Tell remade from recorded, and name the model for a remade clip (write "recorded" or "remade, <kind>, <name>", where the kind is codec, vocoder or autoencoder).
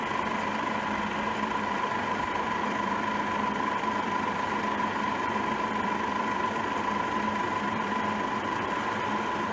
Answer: remade, vocoder, BigVGAN v2